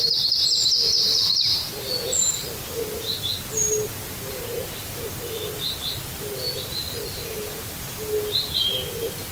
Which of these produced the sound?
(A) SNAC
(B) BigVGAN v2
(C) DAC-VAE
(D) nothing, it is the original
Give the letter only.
D